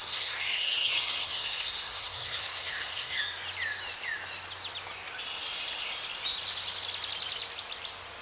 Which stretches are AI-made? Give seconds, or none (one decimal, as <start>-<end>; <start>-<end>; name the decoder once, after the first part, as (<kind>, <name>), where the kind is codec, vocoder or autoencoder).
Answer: 0.0-3.2 (codec, SNAC)